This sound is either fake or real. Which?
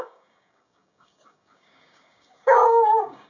fake